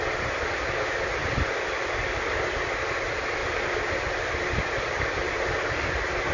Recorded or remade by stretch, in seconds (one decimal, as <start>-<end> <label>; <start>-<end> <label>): 0.0-6.3 recorded